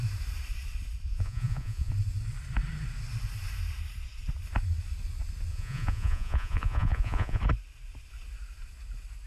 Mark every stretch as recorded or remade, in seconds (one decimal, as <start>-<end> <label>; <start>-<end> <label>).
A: 0.0-1.1 recorded; 1.1-1.9 remade; 1.9-5.5 recorded; 5.5-7.4 remade; 7.4-9.3 recorded